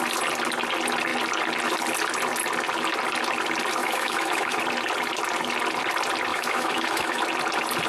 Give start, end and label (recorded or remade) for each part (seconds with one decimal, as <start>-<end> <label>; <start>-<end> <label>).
0.0-3.8 recorded; 3.8-4.6 remade; 4.6-6.3 recorded; 6.3-7.2 remade; 7.2-7.9 recorded